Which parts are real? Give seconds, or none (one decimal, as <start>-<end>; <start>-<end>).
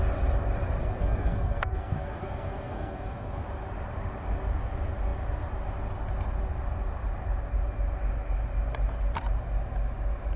0.0-0.8; 3.4-10.4